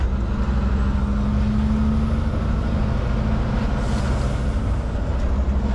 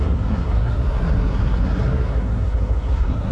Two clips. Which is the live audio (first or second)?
first